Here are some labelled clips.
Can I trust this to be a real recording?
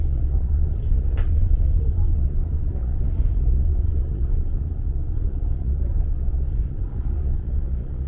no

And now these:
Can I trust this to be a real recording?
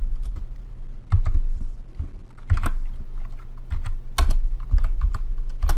yes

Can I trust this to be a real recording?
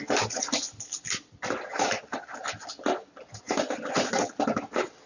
yes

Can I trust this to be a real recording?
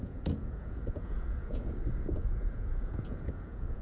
no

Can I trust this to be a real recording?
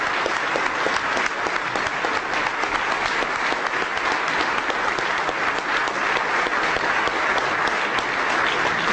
yes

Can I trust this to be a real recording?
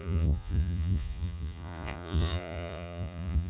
no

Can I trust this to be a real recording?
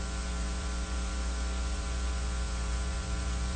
no